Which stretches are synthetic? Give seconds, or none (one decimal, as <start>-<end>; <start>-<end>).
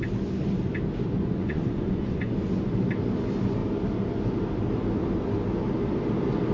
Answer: 1.2-2.3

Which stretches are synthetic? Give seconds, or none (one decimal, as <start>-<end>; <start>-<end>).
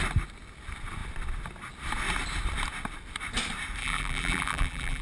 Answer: 3.8-5.0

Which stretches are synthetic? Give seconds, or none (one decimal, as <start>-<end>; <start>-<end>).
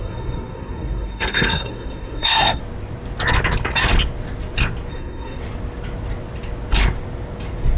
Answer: 0.0-2.6; 4.9-5.4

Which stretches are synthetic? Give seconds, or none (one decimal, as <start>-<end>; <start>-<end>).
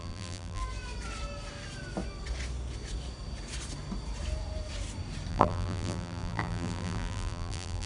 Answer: 0.0-0.6; 5.3-7.9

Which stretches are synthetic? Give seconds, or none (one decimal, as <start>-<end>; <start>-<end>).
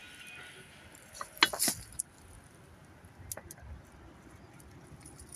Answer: none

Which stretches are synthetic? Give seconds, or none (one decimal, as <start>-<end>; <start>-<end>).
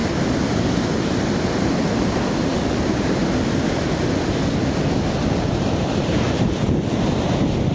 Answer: 1.0-3.2; 5.6-7.7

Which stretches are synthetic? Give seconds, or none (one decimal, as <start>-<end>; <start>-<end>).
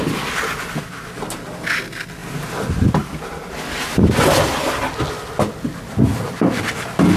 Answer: none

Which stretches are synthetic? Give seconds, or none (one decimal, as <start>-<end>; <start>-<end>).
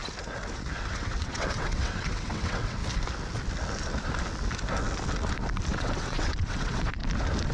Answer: 0.8-2.8; 5.7-7.0